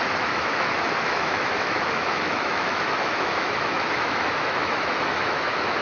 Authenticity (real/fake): fake